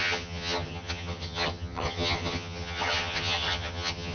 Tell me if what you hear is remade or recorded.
remade